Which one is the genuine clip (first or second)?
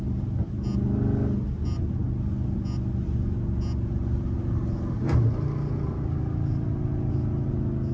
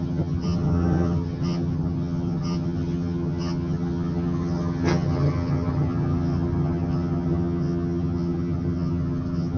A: first